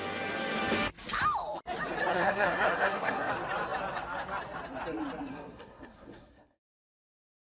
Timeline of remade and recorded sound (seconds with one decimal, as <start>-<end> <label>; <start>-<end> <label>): 0.0-2.1 recorded; 2.1-3.3 remade; 3.3-5.3 recorded; 5.3-7.0 remade; 7.0-7.6 recorded